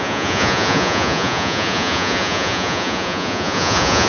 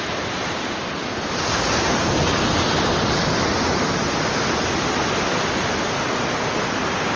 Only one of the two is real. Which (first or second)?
second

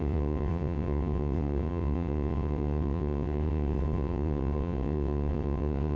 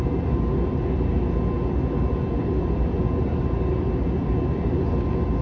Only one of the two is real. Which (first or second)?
second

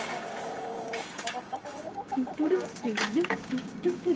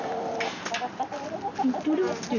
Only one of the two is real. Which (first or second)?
second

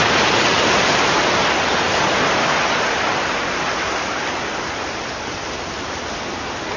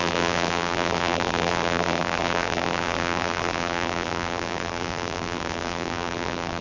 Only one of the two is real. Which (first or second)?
first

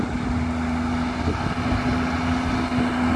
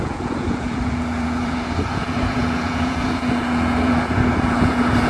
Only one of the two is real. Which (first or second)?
first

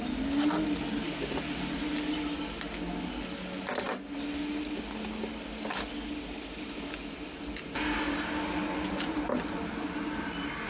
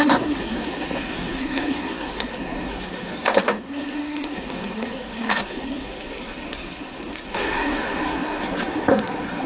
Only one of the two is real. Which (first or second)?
first